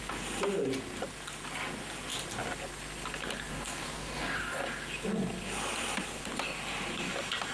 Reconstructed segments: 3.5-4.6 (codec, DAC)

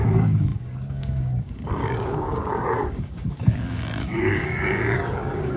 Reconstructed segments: 0.0-5.6 (codec, DAC)

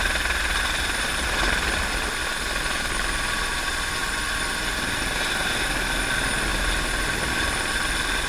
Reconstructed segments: none

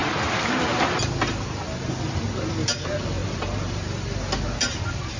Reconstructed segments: none

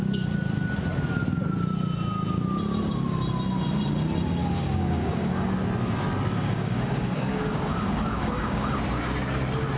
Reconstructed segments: 4.4-5.5 (codec, DAC); 6.4-8.8

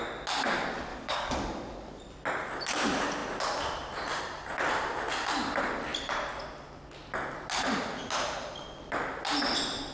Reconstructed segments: 0.9-2.0 (codec, DAC)

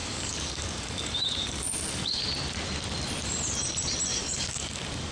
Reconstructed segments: 0.0-2.2 (codec, DAC); 4.1-5.1

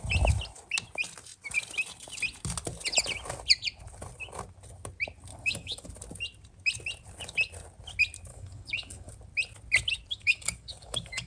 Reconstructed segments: 5.3-5.9 (codec, DAC); 8.3-9.1; 10.1-11.3